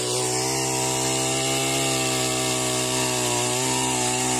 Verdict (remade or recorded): recorded